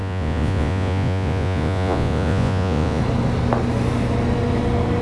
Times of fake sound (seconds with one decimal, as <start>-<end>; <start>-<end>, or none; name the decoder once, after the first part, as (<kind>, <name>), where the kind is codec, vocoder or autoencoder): 0.0-3.0 (vocoder, Vocos)

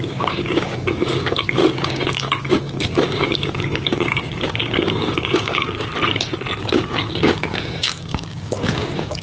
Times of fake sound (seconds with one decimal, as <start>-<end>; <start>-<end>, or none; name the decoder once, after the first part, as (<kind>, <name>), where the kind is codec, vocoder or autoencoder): 0.0-5.9 (codec, DAC); 6.6-9.2

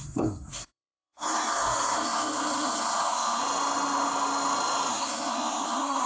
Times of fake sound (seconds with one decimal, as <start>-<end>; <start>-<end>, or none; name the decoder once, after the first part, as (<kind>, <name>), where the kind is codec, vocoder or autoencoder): 0.0-3.4 (codec, SNAC); 4.9-6.1

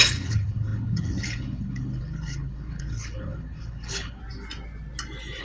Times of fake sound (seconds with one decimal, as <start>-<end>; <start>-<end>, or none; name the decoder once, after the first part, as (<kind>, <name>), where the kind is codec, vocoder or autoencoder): 0.0-4.2 (codec, HILCodec)

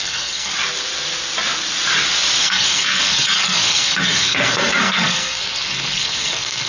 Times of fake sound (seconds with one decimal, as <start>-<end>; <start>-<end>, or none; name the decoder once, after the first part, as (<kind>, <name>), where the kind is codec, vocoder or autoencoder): 0.0-0.5 (codec, SNAC); 2.4-6.7

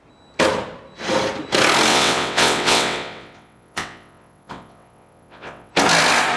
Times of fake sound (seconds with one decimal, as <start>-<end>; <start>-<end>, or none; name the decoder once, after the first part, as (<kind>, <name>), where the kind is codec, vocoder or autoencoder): 1.9-5.7 (vocoder, WaveNeXt)